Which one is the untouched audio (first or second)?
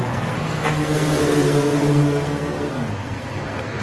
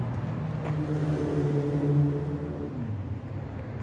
second